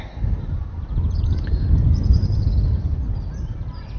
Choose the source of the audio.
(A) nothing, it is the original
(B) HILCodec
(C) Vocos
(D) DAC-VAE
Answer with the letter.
A